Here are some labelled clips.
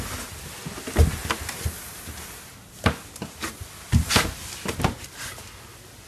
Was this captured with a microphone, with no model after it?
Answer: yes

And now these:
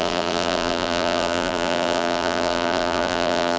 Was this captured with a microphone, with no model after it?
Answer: no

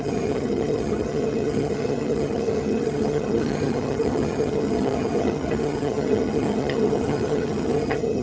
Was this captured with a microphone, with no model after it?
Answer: no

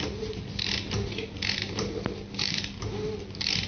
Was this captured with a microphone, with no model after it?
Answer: yes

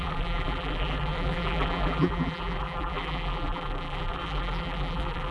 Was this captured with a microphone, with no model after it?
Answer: no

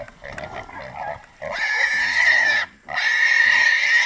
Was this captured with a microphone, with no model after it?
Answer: yes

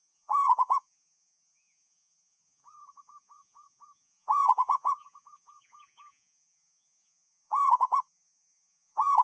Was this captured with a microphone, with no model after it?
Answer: no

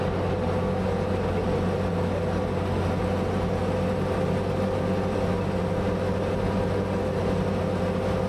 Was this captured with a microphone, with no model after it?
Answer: yes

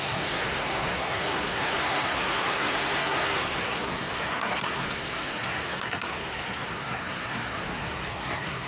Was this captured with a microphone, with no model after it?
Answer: no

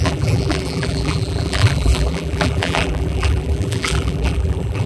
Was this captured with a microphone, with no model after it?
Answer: no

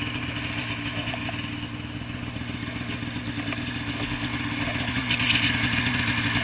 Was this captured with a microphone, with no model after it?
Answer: yes